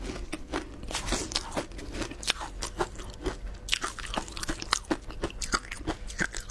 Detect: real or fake real